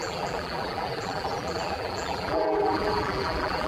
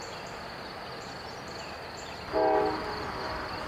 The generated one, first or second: first